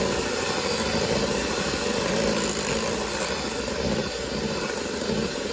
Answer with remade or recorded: recorded